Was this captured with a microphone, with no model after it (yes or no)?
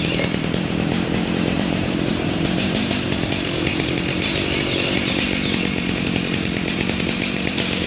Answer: no